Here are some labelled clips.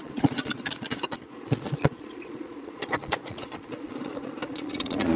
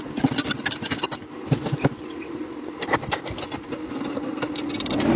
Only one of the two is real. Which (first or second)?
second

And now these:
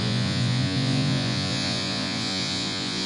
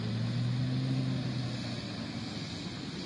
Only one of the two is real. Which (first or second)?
second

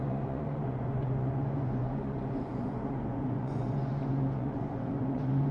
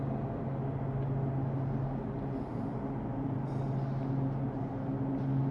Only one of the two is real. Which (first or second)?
second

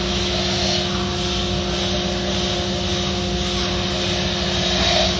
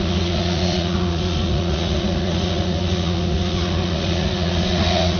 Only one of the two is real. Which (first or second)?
first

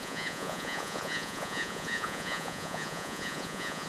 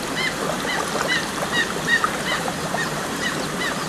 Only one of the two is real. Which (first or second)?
second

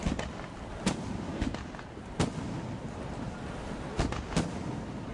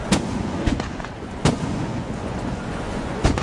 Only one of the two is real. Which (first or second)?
first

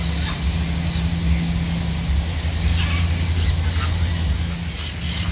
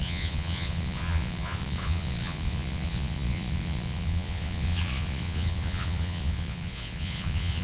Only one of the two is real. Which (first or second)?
first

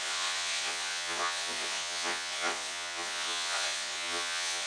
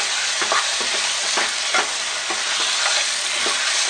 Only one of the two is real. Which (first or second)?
second